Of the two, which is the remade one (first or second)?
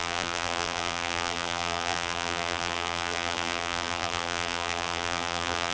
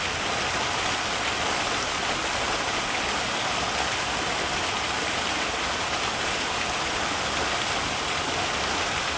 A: first